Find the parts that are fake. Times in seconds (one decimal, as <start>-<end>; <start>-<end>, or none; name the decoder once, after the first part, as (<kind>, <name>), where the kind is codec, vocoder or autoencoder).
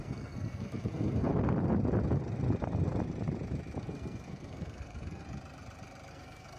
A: 0.0-1.3 (codec, SNAC); 3.8-5.2; 6.1-6.6